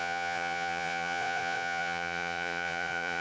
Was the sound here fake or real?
fake